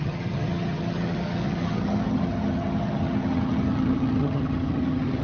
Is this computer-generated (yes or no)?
yes